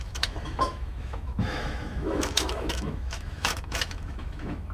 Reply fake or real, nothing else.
fake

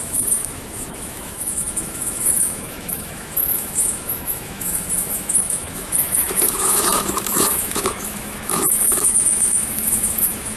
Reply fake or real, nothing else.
fake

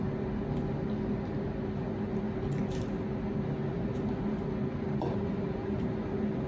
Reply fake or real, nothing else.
real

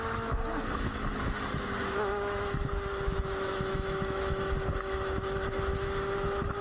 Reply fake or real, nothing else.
fake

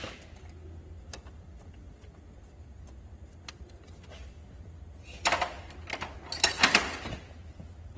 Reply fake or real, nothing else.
real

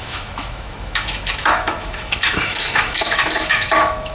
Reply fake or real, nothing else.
fake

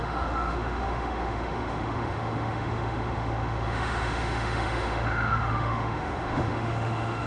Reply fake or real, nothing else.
fake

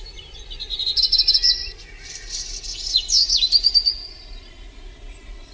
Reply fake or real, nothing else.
real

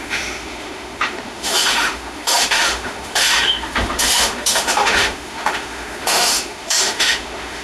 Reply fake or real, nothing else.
fake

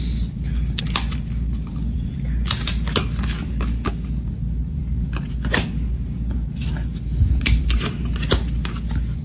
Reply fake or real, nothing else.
real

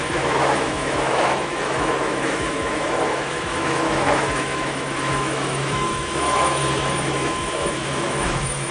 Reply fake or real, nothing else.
fake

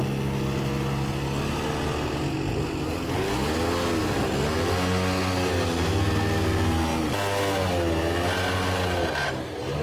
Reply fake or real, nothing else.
real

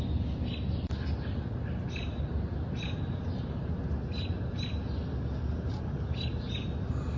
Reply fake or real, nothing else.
real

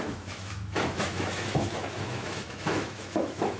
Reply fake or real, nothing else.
fake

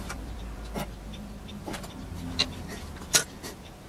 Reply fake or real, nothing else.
real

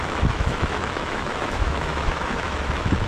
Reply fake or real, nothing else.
fake